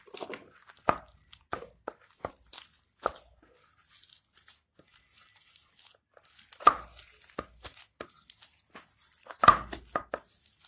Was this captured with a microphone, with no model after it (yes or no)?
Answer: yes